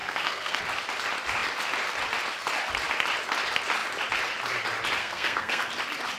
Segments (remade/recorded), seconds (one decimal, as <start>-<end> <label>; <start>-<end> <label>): 0.0-0.6 remade; 0.6-5.0 recorded; 5.0-5.7 remade; 5.7-6.2 recorded